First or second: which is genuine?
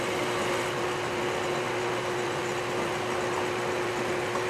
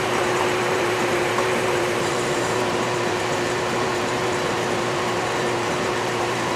first